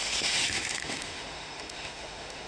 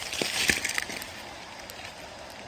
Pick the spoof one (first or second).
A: first